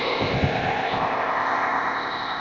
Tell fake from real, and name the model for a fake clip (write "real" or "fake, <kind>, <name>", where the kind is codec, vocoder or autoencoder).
fake, codec, ZipCodec